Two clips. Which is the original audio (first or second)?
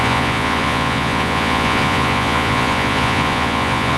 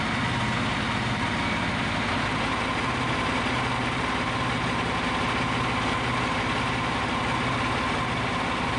second